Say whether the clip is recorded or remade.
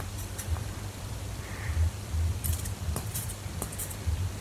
remade